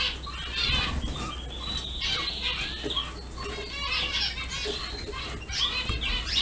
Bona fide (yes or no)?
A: yes